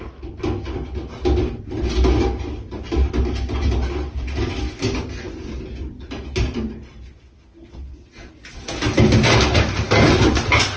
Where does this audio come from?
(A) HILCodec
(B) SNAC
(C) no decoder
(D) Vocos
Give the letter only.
C